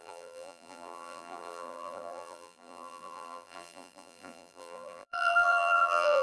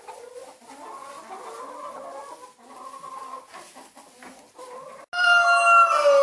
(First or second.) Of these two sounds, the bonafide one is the second